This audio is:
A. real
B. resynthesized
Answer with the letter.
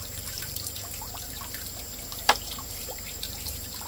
B